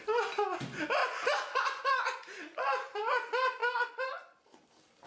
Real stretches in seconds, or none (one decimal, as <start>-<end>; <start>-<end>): 0.0-1.0; 2.6-5.1